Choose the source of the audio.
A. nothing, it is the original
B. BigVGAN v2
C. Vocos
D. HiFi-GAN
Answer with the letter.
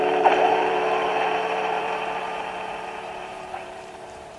B